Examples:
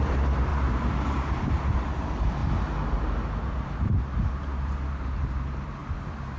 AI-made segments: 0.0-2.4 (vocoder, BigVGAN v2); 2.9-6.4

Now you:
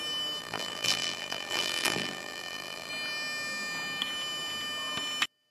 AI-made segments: 0.4-2.9 (vocoder, BigVGAN v2)

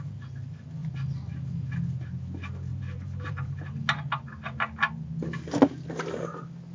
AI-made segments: 2.7-3.8 (vocoder, BigVGAN v2)

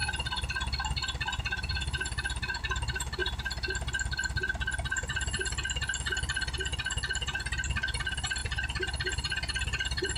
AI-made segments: 8.4-10.2 (vocoder, BigVGAN v2)